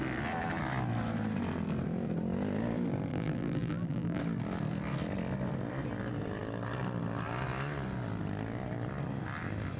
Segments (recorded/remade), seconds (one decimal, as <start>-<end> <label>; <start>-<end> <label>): 0.0-3.1 recorded; 3.1-4.2 remade; 4.2-9.8 recorded